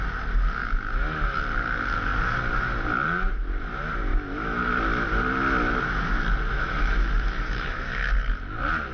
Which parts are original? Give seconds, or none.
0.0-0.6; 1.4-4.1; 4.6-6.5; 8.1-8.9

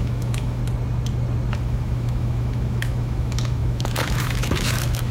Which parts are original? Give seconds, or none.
0.6-1.5

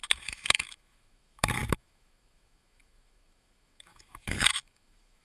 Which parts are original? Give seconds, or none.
none

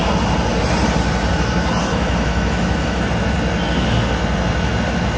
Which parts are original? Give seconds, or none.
0.0-1.9; 3.0-5.2

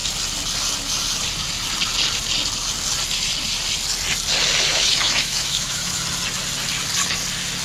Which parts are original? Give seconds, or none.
0.0-4.7; 6.0-7.6

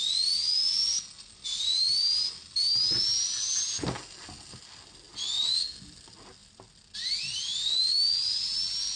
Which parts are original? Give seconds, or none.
0.0-9.0

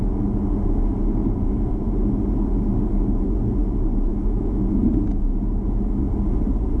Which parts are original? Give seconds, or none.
0.0-4.1; 4.8-6.8

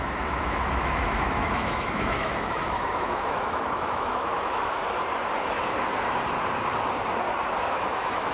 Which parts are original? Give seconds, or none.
4.8-7.7